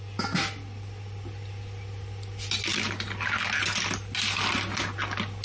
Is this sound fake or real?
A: real